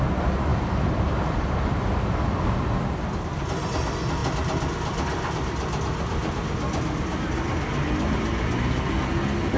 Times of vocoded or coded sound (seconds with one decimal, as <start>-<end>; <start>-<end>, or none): none